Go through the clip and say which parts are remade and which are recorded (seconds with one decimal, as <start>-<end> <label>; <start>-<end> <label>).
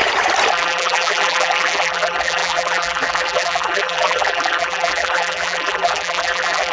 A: 0.0-0.5 recorded; 0.5-6.7 remade